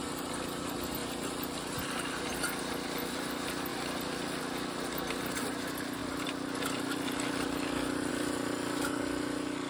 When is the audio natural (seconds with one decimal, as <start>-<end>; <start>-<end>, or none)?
0.0-3.7; 4.4-6.0; 8.1-9.7